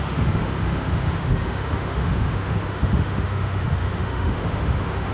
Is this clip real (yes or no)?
no